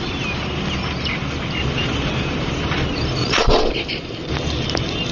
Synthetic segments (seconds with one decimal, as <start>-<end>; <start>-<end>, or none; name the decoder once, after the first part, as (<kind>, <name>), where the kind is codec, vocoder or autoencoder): 3.2-3.7 (vocoder, Vocos)